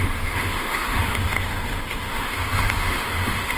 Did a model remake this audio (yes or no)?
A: yes